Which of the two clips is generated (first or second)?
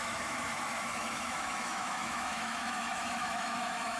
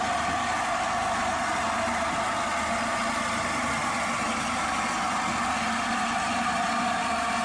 first